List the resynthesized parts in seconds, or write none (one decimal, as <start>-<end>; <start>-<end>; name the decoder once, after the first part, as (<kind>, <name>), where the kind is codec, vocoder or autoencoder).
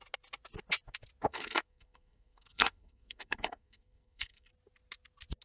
1.3-4.5 (codec, SNAC)